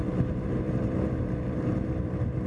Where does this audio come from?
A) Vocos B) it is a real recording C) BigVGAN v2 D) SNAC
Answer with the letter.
C